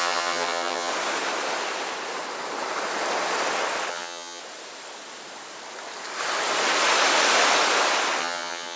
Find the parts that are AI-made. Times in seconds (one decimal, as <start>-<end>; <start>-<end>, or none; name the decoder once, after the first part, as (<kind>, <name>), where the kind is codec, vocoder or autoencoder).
0.0-0.9 (vocoder, HiFi-GAN); 3.9-4.4; 8.2-8.8